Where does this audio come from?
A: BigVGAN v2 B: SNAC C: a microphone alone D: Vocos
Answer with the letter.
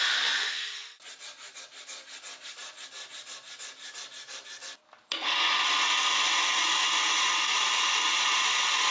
C